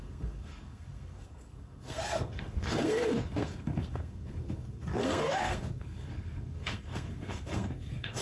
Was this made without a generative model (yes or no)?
no